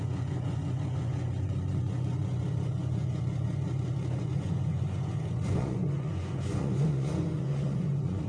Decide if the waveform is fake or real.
fake